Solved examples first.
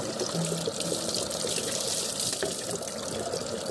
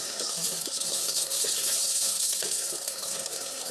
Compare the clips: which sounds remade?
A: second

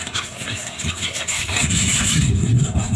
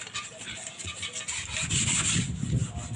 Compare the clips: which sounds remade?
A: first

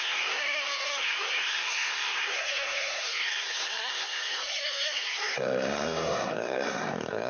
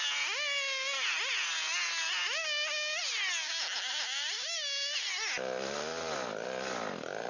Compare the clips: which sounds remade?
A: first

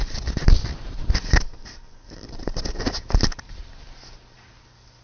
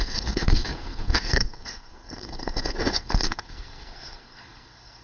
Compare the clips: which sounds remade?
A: second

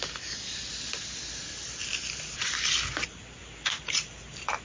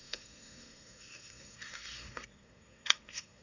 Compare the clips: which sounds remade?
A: second